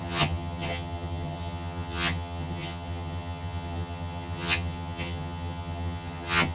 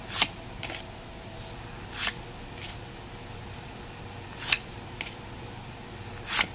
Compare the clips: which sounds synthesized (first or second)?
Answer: first